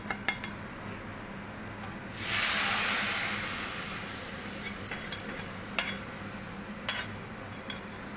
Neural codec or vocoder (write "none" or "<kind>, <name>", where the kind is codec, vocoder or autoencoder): none